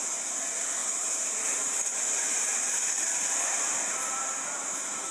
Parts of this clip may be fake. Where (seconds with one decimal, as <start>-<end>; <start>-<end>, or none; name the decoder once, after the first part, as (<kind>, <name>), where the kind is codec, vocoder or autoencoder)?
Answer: 0.8-3.7 (vocoder, BigVGAN v2)

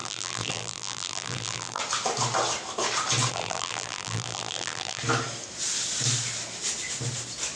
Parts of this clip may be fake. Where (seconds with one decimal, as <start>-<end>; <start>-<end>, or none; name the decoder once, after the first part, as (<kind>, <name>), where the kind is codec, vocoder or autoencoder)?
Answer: 0.0-1.8 (vocoder, BigVGAN v2); 3.3-5.0

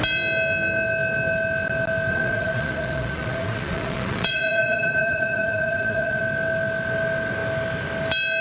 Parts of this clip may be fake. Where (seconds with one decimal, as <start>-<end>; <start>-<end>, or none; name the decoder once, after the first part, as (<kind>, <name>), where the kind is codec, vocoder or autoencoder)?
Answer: 2.1-6.2 (vocoder, Vocos)

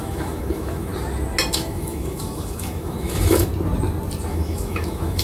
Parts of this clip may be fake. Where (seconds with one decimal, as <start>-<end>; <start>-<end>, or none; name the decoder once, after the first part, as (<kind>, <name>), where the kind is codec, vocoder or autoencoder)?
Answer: 0.0-0.9 (autoencoder, DAC-VAE); 1.5-3.5; 4.3-5.2

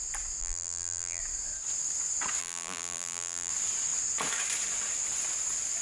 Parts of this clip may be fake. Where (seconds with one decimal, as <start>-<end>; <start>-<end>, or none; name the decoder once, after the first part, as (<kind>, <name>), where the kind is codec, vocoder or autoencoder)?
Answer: 0.4-1.2 (vocoder, BigVGAN v2); 2.4-3.5

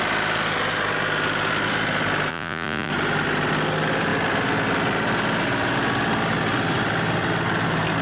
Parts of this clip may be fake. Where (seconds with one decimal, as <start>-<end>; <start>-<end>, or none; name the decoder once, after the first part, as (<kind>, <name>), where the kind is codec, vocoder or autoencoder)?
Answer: 2.3-2.9 (vocoder, Vocos)